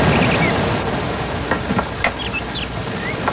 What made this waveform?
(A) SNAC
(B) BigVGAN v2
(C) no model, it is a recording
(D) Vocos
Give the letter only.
C